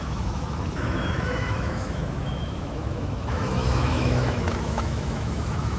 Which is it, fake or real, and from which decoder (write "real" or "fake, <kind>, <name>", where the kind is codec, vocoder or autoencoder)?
fake, autoencoder, DAC-VAE